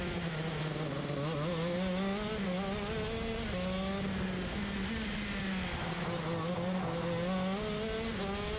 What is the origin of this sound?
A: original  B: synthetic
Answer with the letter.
A